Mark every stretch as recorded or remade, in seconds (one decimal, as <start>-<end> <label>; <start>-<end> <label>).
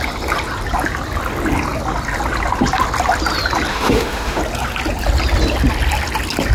0.0-3.7 recorded; 3.7-4.4 remade; 4.4-6.5 recorded